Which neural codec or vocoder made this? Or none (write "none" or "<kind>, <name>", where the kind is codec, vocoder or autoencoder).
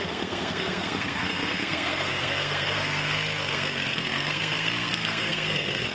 codec, SNAC